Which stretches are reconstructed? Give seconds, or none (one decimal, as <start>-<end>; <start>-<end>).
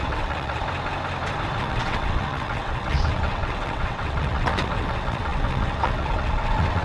0.0-0.6; 1.6-6.8